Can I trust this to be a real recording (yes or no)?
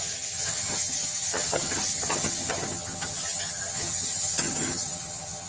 no